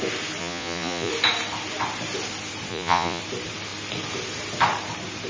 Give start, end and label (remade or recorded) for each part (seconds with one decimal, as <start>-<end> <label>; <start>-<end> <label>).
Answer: 0.0-0.4 recorded; 0.4-1.1 remade; 1.1-2.7 recorded; 2.7-3.2 remade; 3.2-5.3 recorded